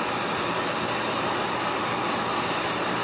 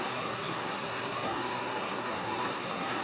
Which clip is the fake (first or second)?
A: second